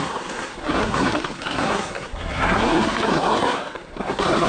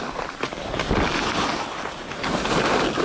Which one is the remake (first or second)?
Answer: first